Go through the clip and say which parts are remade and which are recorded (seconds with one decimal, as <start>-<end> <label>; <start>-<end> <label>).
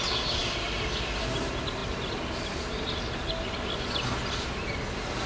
0.0-5.3 recorded